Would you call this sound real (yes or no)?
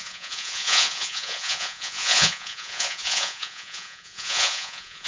no